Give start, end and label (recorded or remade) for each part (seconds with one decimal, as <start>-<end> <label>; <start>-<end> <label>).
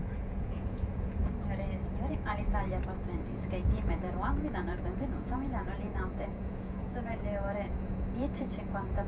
0.0-1.2 remade; 1.2-1.9 recorded; 1.9-2.5 remade; 2.5-3.3 recorded; 3.3-9.1 remade